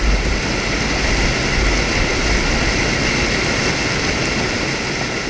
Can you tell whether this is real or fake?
real